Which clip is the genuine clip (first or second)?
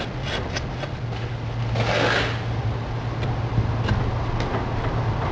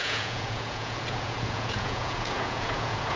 first